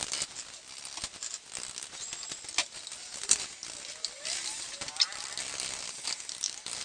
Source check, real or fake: real